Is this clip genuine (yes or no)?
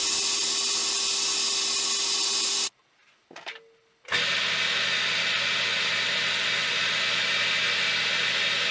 yes